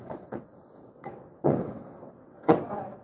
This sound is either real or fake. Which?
fake